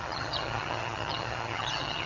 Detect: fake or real fake